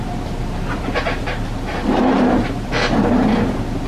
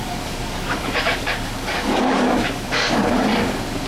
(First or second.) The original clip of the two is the first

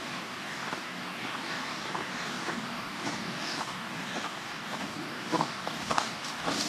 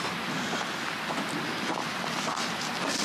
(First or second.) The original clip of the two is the second